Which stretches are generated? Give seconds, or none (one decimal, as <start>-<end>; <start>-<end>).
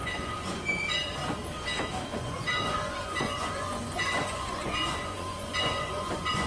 0.0-1.2; 2.2-6.5